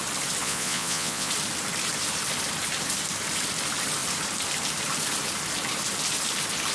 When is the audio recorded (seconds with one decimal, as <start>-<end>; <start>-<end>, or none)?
0.0-0.4; 1.3-6.7